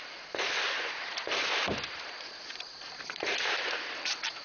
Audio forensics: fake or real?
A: fake